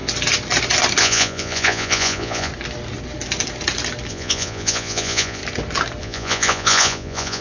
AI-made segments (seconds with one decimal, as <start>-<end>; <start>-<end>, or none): 1.0-2.5; 4.1-5.4; 6.0-7.4